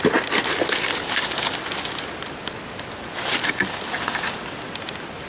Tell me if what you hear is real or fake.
real